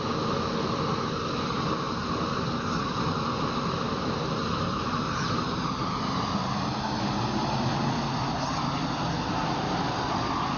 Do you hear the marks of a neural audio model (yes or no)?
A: no